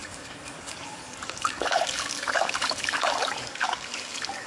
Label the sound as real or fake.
fake